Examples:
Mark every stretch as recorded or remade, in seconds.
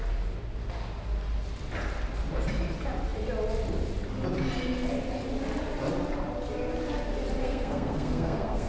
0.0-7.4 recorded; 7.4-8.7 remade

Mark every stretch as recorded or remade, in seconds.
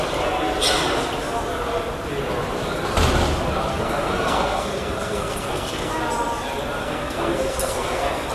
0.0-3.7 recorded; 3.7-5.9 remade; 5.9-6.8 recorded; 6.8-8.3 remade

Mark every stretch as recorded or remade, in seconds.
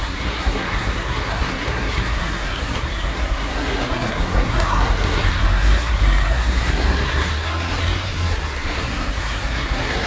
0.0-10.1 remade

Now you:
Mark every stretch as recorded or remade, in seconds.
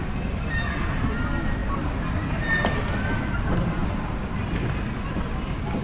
0.0-5.8 recorded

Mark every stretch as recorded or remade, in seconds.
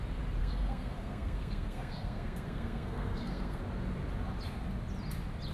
0.0-0.4 recorded; 0.4-3.6 remade; 3.6-5.5 recorded